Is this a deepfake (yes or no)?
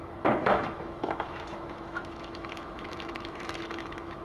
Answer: yes